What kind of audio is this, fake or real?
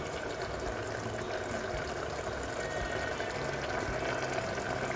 real